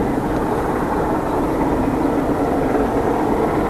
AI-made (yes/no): no